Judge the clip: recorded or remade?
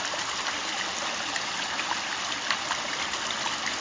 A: recorded